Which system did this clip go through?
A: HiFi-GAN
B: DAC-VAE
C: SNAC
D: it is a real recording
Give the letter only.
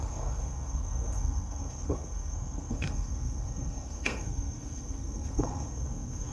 C